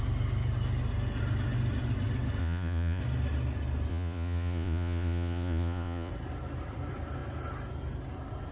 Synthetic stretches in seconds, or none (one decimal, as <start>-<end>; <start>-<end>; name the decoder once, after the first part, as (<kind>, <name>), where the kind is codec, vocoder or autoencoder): 2.4-3.0 (vocoder, Vocos); 3.9-6.1